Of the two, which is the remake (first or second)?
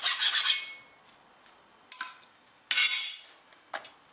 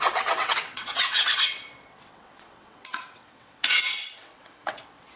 second